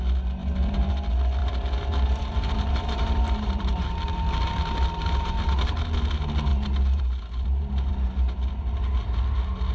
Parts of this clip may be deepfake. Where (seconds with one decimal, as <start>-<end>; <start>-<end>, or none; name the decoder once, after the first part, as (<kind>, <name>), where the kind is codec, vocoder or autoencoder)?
0.4-0.9 (vocoder, BigVGAN v2); 1.4-5.8; 6.5-7.9